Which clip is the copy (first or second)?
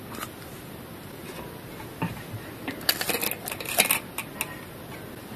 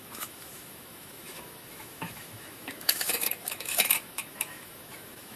second